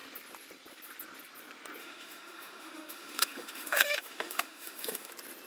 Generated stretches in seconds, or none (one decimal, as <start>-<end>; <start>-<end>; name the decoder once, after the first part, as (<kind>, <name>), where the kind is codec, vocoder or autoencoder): 1.8-5.1 (autoencoder, DAC-VAE)